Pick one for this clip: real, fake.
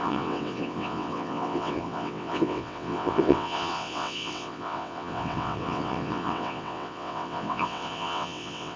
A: fake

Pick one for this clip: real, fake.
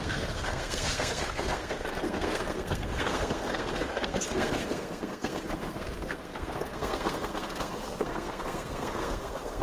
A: fake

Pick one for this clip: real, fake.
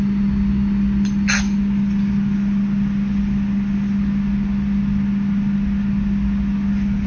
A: real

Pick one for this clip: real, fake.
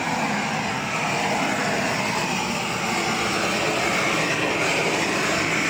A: real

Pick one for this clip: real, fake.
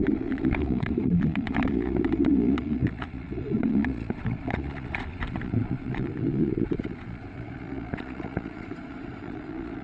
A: fake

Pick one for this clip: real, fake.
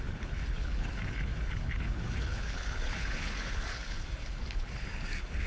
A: fake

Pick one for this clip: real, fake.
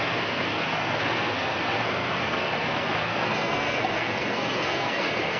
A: fake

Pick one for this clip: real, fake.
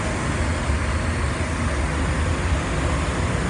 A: real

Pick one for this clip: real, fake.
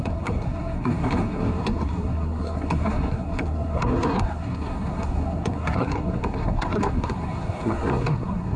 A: fake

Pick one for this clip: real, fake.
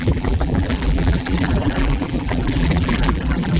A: fake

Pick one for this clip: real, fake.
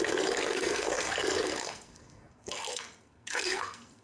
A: fake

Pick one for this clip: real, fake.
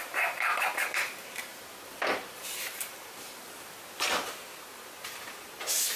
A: fake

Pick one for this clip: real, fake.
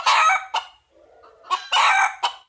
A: real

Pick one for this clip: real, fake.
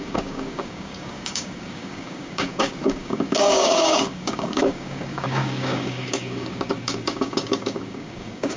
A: fake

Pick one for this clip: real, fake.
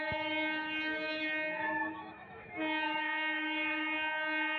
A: fake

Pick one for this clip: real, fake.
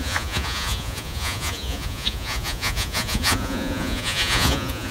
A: fake